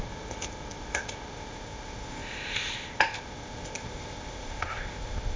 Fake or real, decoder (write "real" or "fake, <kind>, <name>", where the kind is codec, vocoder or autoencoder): fake, codec, ZipCodec